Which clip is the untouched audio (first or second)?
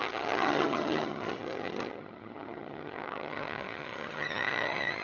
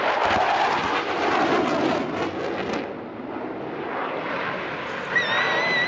second